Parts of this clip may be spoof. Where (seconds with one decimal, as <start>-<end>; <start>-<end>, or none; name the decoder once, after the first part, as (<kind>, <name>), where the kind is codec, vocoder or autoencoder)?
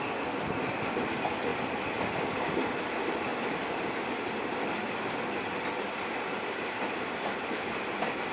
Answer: none